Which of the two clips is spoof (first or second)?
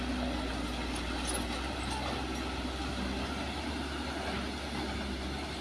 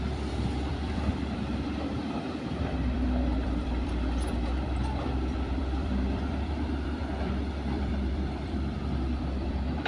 second